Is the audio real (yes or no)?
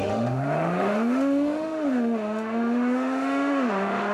no